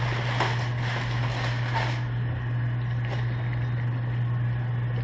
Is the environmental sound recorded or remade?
recorded